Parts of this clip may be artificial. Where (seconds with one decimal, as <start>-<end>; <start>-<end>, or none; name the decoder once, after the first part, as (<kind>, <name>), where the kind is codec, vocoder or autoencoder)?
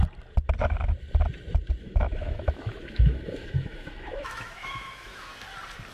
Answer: 1.8-5.3 (autoencoder, DAC-VAE)